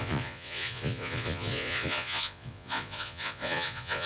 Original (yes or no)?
no